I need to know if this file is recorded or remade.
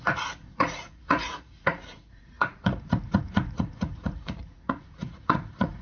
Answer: remade